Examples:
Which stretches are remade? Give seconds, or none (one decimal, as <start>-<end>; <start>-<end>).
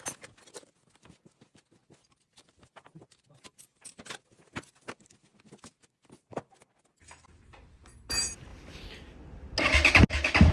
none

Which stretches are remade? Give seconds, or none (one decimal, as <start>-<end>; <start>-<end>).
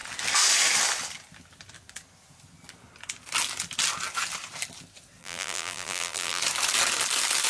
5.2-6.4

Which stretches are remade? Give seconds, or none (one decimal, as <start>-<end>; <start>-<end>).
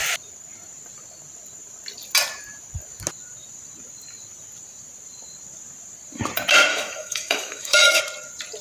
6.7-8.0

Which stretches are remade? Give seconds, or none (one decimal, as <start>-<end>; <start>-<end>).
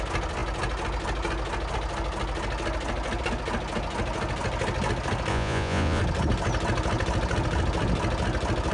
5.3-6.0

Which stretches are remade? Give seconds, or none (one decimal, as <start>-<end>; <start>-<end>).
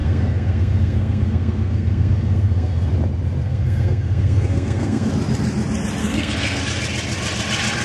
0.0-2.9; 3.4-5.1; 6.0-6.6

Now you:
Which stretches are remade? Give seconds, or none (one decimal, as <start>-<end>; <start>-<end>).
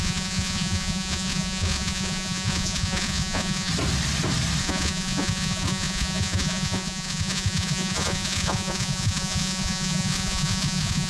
0.0-3.7; 4.6-11.1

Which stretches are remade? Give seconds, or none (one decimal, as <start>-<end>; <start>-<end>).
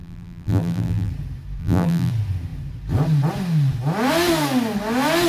0.0-1.1; 1.6-2.1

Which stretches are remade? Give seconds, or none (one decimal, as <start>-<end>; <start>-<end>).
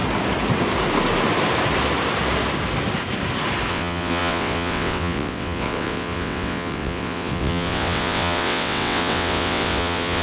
3.7-10.2